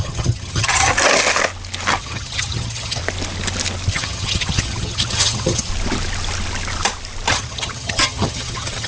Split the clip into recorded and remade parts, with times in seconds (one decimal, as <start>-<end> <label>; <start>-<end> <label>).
0.0-0.9 remade; 0.9-2.0 recorded; 2.0-3.0 remade; 3.0-3.9 recorded; 3.9-5.7 remade; 5.7-7.3 recorded; 7.3-8.9 remade